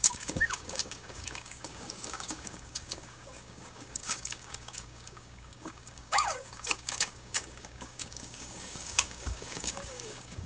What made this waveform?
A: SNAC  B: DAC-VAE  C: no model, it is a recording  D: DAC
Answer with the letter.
D